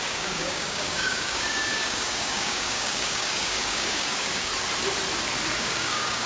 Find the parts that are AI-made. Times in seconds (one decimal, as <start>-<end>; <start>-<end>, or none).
0.0-4.5; 5.6-6.3